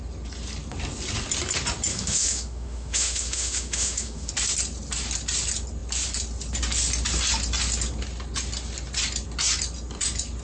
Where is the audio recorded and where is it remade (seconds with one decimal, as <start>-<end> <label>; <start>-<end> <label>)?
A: 0.0-1.9 recorded; 1.9-4.3 remade; 4.3-10.4 recorded